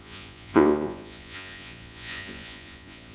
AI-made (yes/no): yes